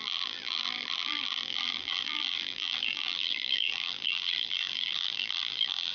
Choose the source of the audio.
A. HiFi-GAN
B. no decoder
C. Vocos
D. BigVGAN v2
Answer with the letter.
D